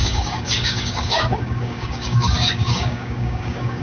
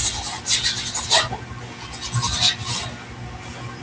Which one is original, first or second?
second